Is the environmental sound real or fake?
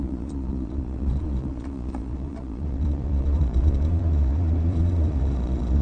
fake